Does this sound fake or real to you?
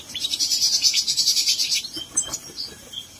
fake